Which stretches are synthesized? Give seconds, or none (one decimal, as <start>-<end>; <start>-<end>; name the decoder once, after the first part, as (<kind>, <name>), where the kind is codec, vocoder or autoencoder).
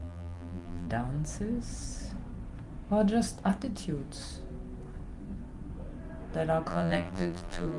0.0-0.9 (vocoder, BigVGAN v2); 6.7-7.8